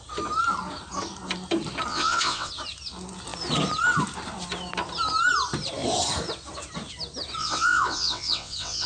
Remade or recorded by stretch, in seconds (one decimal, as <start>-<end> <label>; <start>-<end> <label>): 0.0-1.9 recorded; 1.9-2.5 remade; 2.5-7.4 recorded; 7.4-8.9 remade